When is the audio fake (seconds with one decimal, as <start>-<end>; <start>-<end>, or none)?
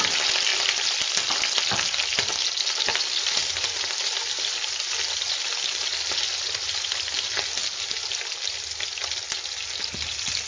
none